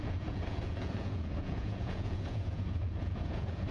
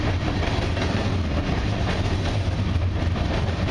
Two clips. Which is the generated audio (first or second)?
first